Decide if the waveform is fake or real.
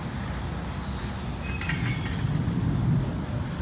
real